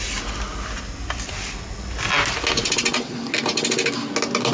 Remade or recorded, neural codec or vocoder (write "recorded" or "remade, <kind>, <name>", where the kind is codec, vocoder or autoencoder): recorded